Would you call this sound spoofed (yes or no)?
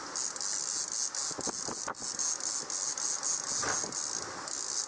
no